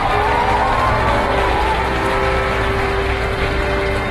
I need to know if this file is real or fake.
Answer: real